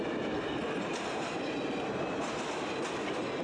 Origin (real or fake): real